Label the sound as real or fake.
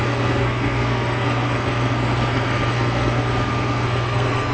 fake